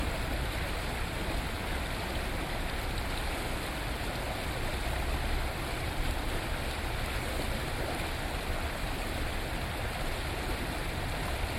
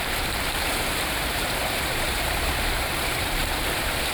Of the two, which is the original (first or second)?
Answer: first